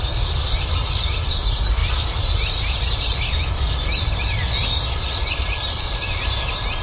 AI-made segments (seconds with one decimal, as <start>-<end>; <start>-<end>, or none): 0.8-1.4; 1.8-3.3; 4.6-6.1